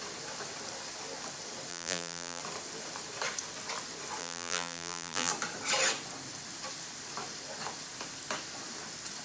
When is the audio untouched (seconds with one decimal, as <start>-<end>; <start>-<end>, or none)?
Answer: 0.0-1.7; 2.4-4.2; 5.3-9.2